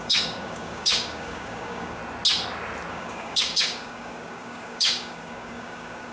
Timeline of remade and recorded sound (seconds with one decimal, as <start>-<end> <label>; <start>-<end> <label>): 0.0-2.0 remade; 2.0-2.9 recorded; 2.9-6.1 remade